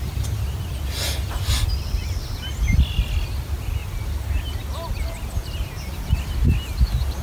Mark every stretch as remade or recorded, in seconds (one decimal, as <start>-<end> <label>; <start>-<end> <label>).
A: 0.0-7.2 recorded